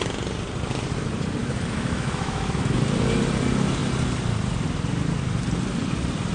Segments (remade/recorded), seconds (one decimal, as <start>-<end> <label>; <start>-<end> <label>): 0.0-1.4 recorded; 1.4-2.8 remade; 2.8-6.3 recorded